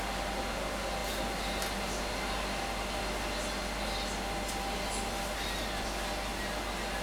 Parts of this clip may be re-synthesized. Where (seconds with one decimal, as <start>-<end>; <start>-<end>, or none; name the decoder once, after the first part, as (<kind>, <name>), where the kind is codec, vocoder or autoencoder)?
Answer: none